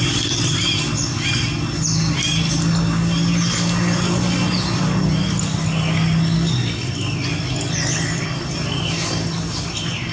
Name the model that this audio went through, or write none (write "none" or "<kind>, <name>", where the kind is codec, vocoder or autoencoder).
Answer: none